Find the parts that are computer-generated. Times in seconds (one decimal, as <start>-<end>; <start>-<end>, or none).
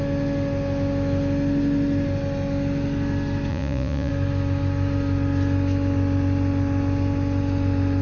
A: 3.5-4.1